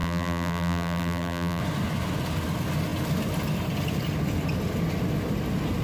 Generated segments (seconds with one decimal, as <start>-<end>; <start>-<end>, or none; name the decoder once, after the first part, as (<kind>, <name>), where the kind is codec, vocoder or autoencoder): 0.0-1.6 (vocoder, BigVGAN v2)